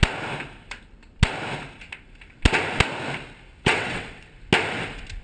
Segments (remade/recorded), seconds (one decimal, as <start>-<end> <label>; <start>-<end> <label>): 0.0-3.5 recorded; 3.5-4.3 remade; 4.3-5.2 recorded